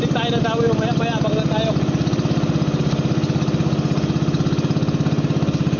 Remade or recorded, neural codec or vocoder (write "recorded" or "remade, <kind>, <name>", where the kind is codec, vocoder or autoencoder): recorded